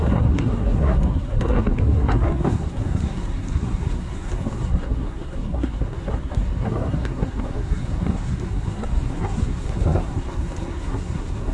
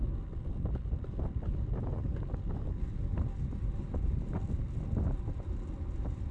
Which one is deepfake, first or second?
first